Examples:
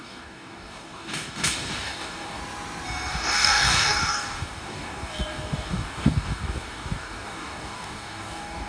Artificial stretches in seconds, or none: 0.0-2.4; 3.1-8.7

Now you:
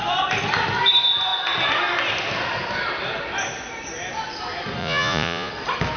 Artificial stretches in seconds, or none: 4.8-5.5

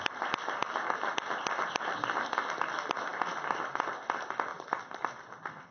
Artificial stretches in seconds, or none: none